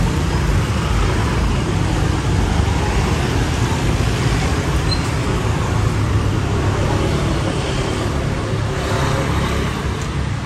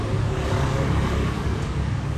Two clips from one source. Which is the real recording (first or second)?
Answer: first